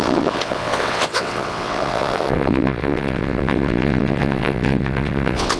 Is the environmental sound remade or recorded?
remade